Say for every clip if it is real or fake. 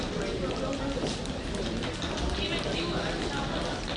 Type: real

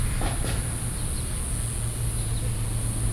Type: real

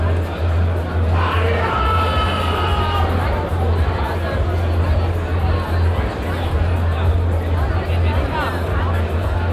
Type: real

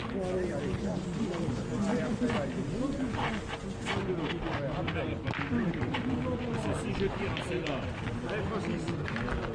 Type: real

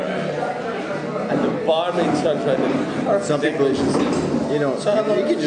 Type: real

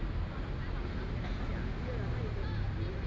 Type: real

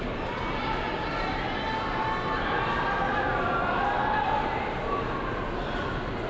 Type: real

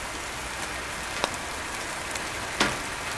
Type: real